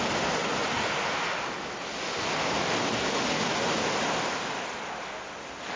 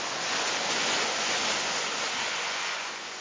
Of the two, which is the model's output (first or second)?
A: second